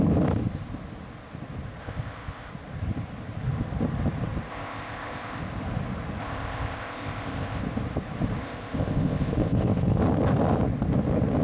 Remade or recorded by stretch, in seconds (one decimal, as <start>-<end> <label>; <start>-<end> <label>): 0.0-1.8 recorded; 1.8-2.5 remade; 2.5-4.5 recorded; 4.5-5.4 remade; 5.4-6.2 recorded; 6.2-7.6 remade; 7.6-8.4 recorded; 8.4-10.0 remade; 10.0-11.4 recorded